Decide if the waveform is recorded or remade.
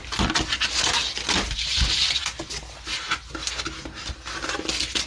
recorded